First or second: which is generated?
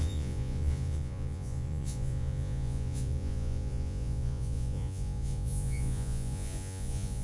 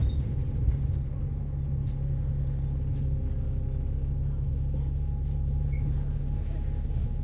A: first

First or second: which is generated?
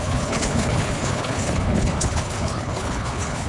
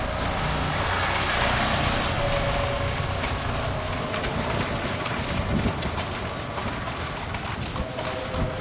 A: first